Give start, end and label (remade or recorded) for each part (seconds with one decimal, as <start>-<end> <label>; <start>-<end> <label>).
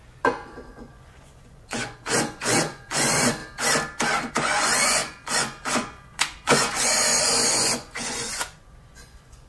0.0-3.4 remade; 3.4-4.3 recorded; 4.3-9.5 remade